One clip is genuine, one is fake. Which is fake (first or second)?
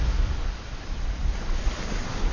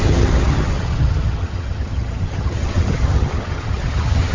second